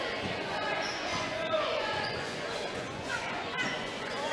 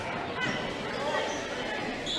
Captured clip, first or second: second